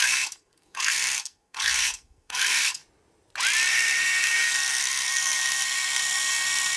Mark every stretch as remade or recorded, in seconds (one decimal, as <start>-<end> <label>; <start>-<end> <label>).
0.0-2.8 remade; 2.8-3.7 recorded; 3.7-6.8 remade

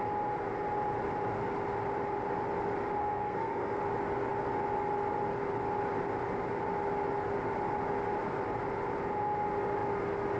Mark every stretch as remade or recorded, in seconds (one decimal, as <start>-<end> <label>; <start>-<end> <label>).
0.0-3.0 recorded; 3.0-3.8 remade; 3.8-10.4 recorded

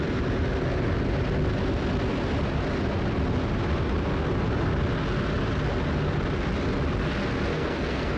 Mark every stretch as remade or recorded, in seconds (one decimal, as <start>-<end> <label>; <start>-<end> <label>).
0.0-7.5 recorded; 7.5-8.2 remade

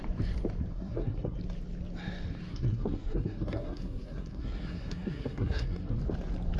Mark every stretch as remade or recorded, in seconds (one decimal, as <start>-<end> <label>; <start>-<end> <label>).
0.0-0.7 recorded; 0.7-1.4 remade; 1.4-2.5 recorded; 2.5-6.0 remade; 6.0-6.6 recorded

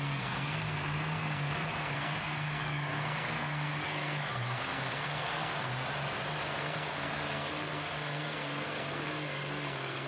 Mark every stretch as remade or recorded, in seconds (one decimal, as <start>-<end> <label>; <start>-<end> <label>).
0.0-5.7 remade; 5.7-6.4 recorded; 6.4-10.1 remade

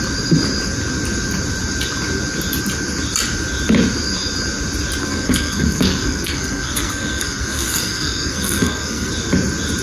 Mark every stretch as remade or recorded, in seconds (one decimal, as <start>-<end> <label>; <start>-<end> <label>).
0.0-5.0 recorded; 5.0-9.1 remade; 9.1-9.8 recorded

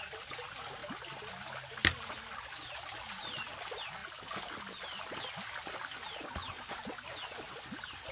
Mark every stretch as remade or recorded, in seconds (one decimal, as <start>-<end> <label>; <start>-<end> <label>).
0.0-8.1 recorded